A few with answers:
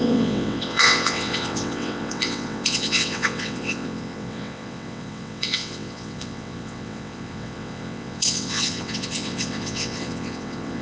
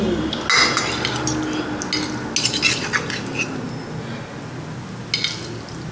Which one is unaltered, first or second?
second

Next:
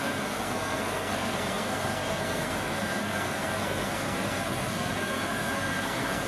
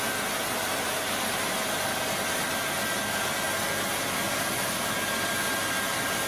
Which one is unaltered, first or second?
second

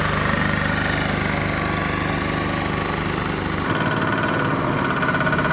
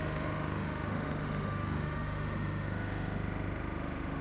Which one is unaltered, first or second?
first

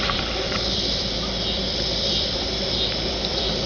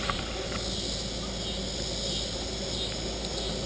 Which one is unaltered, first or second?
second